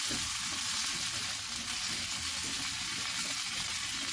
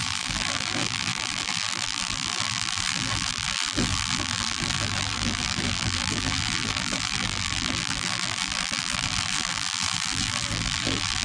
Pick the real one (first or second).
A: first